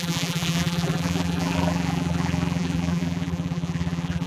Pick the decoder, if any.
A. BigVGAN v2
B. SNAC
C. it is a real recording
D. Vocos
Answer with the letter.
A